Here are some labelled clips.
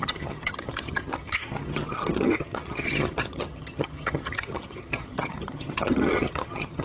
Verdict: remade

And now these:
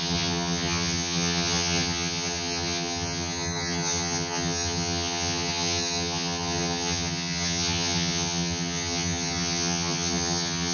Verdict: remade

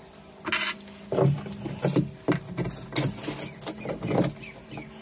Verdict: recorded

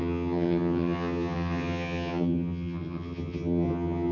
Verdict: remade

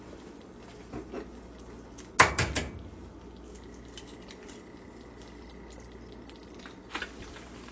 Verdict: recorded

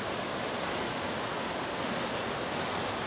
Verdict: recorded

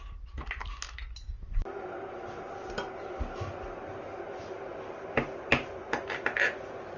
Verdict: recorded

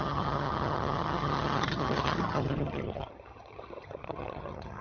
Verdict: remade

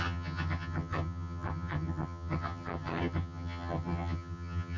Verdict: remade